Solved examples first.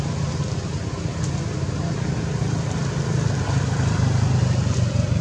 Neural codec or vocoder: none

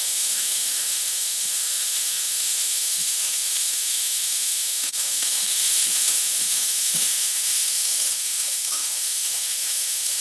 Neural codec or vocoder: autoencoder, DAC-VAE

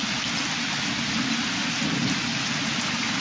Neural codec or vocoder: none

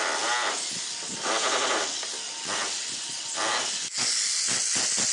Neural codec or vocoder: none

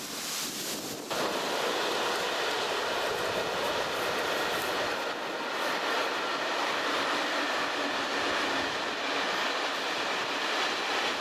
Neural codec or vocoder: none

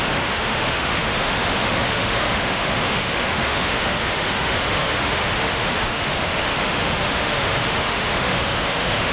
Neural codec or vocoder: autoencoder, DAC-VAE